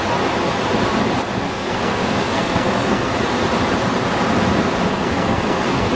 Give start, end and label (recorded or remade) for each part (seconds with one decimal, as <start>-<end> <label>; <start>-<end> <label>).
0.0-1.4 recorded; 1.4-3.1 remade; 3.1-4.9 recorded; 4.9-5.9 remade

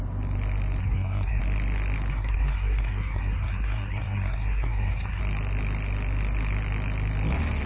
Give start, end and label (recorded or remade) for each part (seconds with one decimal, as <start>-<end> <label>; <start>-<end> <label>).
0.0-0.8 recorded; 0.8-1.4 remade; 1.4-2.1 recorded; 2.1-5.2 remade; 5.2-7.7 recorded

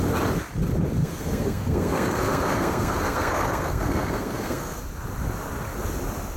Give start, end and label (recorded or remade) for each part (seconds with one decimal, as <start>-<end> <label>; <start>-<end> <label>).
0.0-1.0 recorded; 1.0-4.8 remade; 4.8-6.4 recorded